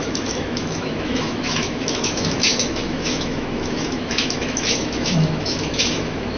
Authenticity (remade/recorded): remade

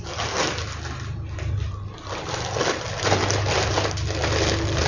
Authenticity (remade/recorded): recorded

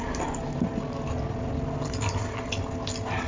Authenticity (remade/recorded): recorded